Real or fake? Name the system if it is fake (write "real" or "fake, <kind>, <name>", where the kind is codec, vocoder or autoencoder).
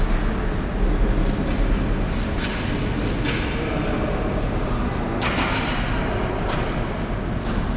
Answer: real